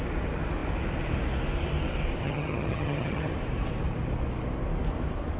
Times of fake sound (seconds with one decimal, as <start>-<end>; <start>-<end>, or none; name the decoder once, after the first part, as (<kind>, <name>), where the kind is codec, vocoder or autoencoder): 2.2-3.3 (vocoder, HiFi-GAN)